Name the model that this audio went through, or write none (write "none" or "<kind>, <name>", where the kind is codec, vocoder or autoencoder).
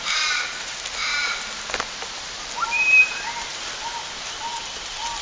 none